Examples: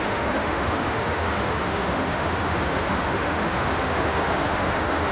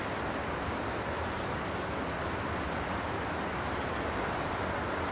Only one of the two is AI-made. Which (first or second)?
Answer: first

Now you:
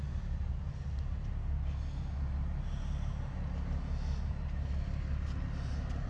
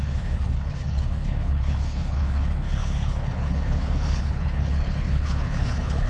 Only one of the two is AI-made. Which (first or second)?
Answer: second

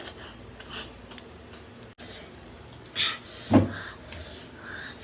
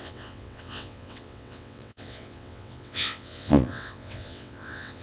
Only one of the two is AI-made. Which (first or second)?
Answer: second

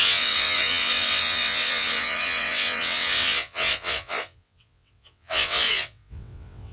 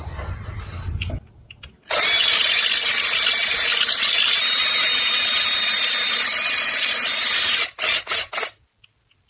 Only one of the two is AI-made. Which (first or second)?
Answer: first